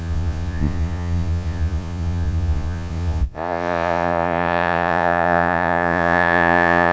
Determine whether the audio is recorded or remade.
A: remade